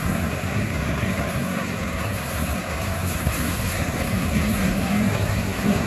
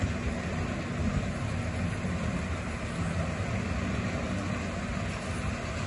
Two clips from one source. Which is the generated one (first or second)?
first